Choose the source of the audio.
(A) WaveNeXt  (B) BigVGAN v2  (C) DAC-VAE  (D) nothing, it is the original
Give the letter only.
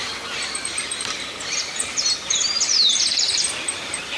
B